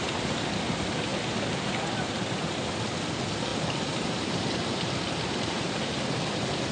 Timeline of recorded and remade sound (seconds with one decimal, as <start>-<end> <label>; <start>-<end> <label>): 0.0-3.5 recorded; 3.5-6.0 remade; 6.0-6.7 recorded